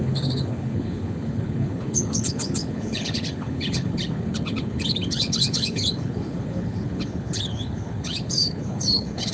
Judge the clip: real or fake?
fake